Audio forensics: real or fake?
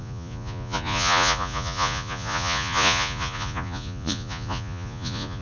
fake